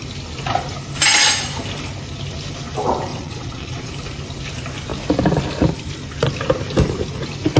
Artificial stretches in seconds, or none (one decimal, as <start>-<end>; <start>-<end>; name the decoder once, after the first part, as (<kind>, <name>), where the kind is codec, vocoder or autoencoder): 3.1-3.9 (vocoder, WaveNeXt)